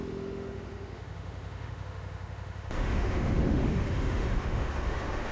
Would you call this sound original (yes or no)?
no